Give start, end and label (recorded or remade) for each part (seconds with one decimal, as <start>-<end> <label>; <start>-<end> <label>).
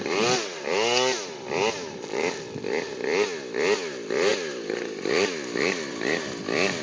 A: 0.0-4.3 recorded; 4.3-5.9 remade; 5.9-6.8 recorded